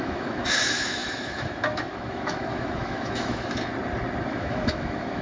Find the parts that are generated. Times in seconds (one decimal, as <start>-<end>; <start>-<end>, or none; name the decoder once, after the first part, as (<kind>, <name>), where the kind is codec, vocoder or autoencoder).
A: 0.0-3.7 (autoencoder, DAC-VAE); 4.3-5.2